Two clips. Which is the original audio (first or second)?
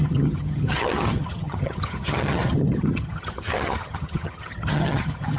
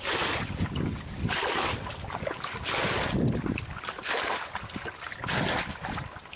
second